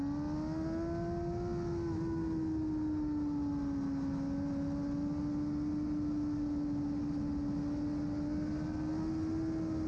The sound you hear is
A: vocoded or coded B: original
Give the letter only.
B